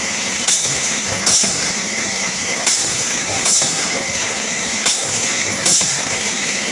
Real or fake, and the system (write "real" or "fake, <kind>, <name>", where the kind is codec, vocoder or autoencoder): fake, codec, SNAC